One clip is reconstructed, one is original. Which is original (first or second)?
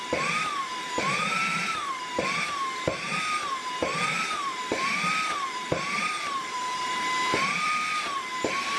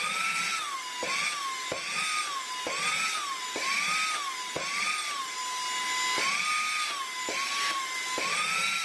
second